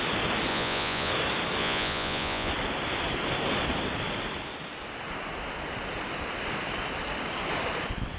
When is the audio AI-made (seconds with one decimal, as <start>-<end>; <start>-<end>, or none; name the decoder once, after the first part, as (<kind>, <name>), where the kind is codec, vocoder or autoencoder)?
0.5-1.1 (vocoder, Vocos); 1.6-2.5